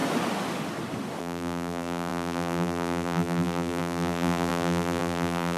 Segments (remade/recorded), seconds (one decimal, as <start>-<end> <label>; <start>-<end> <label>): 0.0-1.2 recorded; 1.2-5.6 remade

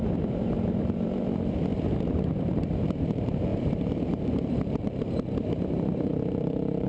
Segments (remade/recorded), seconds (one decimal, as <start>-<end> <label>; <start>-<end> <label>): 0.0-6.9 remade